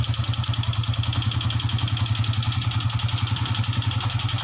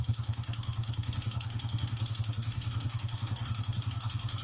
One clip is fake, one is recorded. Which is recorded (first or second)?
first